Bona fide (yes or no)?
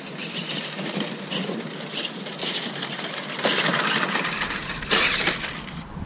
yes